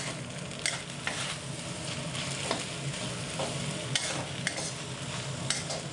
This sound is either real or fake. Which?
real